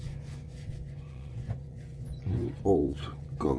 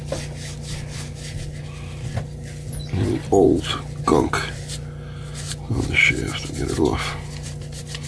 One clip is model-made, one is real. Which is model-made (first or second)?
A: first